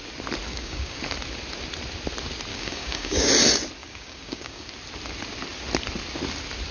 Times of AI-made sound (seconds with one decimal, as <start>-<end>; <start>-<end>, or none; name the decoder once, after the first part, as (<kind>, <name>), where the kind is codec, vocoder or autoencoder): 0.5-1.0 (codec, DAC); 2.5-3.3; 3.8-4.7